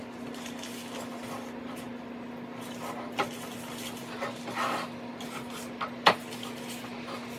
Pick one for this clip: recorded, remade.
recorded